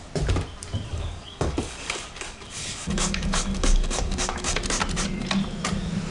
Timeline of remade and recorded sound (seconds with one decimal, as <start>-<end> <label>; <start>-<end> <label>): 0.0-0.9 recorded; 0.9-4.6 remade; 4.6-6.1 recorded